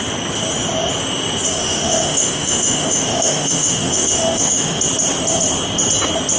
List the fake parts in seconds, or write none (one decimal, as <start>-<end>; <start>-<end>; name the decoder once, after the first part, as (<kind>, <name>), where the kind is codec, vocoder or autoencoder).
1.6-4.8 (autoencoder, DAC-VAE)